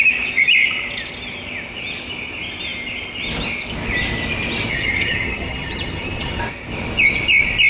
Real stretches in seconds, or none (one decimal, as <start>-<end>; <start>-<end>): 0.0-4.7; 6.4-7.7